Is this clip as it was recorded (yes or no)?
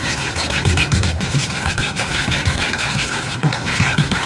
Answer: no